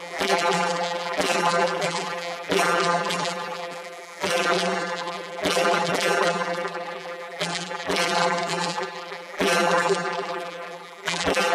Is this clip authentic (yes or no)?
no